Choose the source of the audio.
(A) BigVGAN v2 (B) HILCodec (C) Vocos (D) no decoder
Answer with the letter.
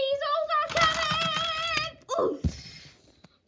D